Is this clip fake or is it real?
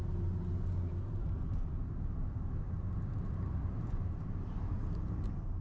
real